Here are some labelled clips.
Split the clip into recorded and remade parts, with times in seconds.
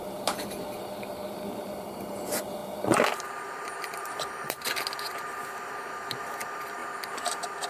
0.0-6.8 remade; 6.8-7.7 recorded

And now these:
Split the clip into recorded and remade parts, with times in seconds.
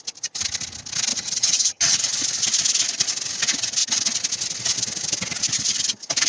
0.0-1.1 recorded; 1.1-2.2 remade; 2.2-6.3 recorded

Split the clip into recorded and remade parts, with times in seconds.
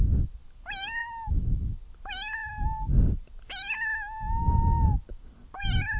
0.0-6.0 recorded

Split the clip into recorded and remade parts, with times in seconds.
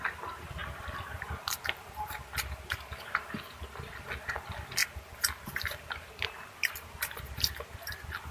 0.0-8.3 recorded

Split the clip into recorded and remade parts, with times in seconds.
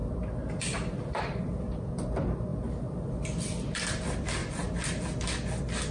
0.0-4.4 remade; 4.4-5.9 recorded